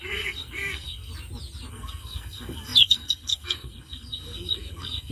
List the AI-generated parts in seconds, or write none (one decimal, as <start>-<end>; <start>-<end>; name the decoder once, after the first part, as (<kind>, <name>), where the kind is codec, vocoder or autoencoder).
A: 0.0-1.1 (codec, SNAC); 1.7-5.1